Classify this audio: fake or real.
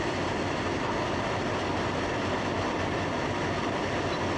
real